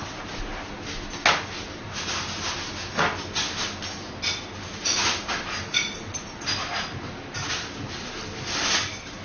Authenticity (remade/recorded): recorded